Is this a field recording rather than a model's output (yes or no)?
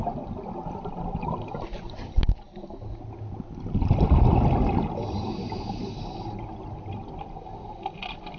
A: yes